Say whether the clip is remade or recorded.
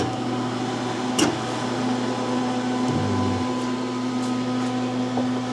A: recorded